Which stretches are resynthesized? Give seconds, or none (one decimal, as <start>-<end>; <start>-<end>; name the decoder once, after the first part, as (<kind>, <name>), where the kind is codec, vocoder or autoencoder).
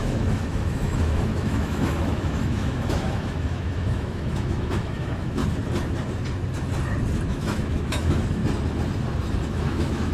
0.0-5.4 (autoencoder, DAC-VAE); 7.3-8.4; 9.5-10.1